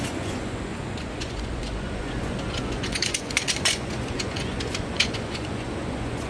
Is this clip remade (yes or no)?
yes